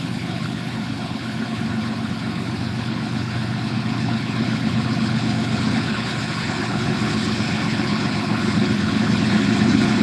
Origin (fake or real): fake